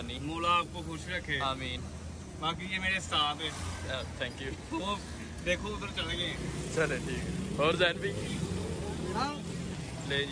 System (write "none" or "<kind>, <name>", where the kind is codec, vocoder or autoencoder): none